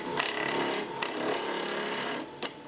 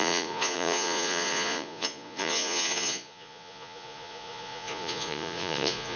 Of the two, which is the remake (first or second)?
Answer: second